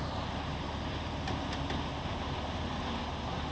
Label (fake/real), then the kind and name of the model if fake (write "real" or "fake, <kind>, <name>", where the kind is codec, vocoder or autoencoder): real